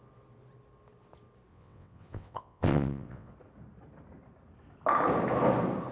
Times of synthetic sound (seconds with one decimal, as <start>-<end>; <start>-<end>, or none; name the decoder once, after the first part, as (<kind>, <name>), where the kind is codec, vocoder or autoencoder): 1.5-3.3 (vocoder, WaveNeXt)